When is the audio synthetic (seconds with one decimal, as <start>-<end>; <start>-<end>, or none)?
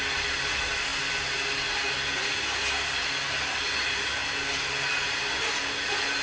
none